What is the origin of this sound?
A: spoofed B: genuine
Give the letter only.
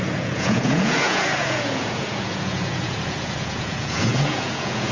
A